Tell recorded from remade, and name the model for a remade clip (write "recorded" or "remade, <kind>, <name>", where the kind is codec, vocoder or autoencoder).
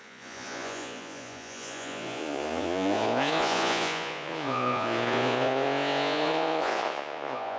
remade, vocoder, Vocos